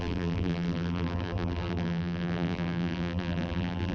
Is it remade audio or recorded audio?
remade